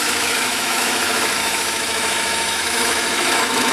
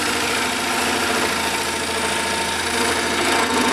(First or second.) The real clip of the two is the second